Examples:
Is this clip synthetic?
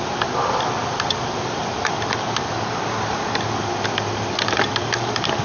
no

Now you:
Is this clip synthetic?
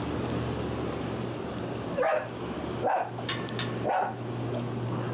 no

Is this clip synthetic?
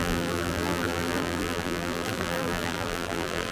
yes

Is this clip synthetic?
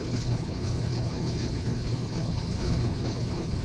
yes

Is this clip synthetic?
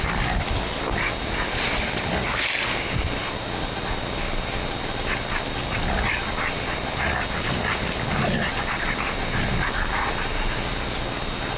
no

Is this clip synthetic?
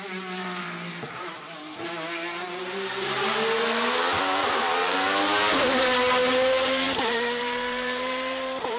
yes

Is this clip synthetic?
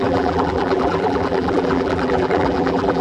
yes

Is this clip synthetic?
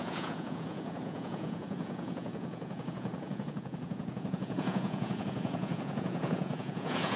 yes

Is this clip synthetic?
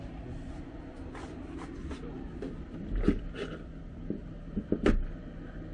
no